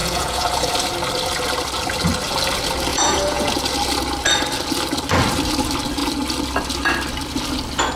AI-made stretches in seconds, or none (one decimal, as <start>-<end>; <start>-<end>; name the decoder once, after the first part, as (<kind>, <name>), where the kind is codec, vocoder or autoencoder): 0.0-0.7 (vocoder, Vocos); 2.9-3.6

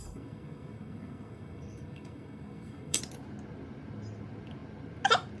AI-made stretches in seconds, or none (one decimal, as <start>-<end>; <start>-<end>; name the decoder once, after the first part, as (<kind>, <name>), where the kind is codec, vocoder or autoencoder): 0.0-3.0 (codec, SNAC)

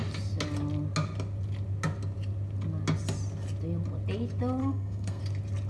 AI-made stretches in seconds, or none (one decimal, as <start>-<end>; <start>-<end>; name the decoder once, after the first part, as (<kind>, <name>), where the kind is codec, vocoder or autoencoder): 4.6-5.2 (codec, SNAC)

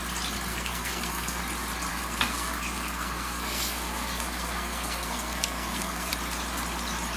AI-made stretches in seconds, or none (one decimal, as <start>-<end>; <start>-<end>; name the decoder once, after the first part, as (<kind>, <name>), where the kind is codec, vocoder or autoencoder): 0.5-1.4 (codec, SNAC); 1.9-6.1

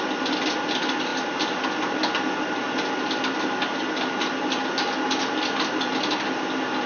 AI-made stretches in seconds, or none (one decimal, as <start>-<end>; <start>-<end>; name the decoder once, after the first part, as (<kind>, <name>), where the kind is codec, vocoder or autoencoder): none

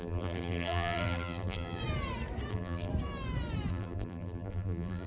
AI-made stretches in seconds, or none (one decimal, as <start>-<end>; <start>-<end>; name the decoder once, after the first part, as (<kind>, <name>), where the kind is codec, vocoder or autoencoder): 0.0-1.8 (vocoder, BigVGAN v2); 2.5-2.9; 3.7-5.1

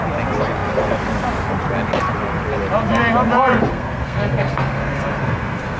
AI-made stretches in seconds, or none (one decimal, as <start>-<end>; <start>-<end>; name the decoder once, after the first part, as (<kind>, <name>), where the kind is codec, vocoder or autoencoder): 3.7-5.8 (codec, SNAC)

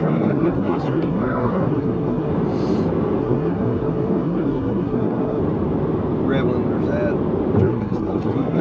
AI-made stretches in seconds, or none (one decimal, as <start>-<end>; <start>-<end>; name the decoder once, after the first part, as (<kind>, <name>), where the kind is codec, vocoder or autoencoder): 0.0-2.3 (codec, SNAC); 3.2-5.4; 7.6-8.6